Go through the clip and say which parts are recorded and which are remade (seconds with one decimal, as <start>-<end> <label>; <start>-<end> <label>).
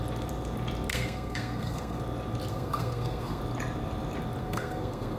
0.0-0.9 recorded; 0.9-2.0 remade; 2.0-2.5 recorded; 2.5-3.4 remade; 3.4-4.4 recorded; 4.4-5.2 remade